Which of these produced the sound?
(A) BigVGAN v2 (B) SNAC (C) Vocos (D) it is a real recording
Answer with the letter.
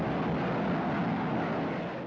D